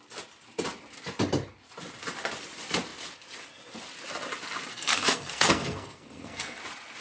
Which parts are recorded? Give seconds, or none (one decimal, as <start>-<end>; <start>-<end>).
0.0-4.7; 6.6-7.0